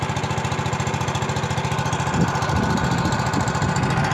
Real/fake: real